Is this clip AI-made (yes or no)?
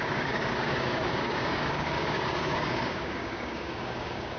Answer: yes